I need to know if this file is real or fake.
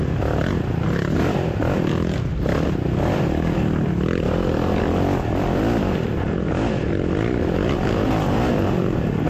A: real